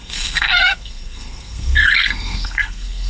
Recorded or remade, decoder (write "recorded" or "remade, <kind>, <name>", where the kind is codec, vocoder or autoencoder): remade, codec, SNAC